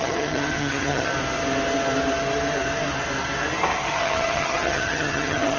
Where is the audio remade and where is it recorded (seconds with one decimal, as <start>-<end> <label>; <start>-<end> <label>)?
0.0-1.1 remade; 1.1-3.9 recorded; 3.9-5.6 remade